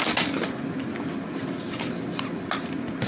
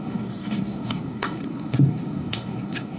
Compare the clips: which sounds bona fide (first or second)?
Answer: first